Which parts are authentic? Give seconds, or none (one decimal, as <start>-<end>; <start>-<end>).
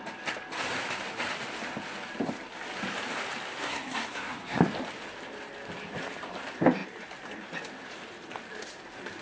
0.0-3.6; 4.6-9.2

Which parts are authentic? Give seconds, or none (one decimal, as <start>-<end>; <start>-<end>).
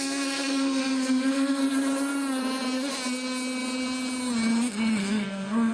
1.6-5.0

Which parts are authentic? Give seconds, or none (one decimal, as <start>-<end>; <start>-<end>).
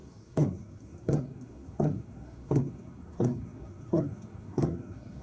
none